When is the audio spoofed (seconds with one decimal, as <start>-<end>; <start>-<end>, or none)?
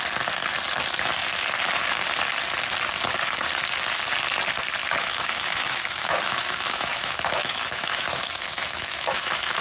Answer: 4.8-9.6